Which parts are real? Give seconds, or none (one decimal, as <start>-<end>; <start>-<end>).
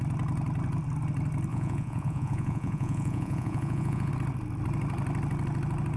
0.0-1.5; 4.1-6.0